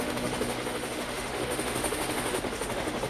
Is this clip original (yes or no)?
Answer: no